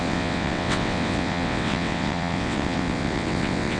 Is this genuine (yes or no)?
no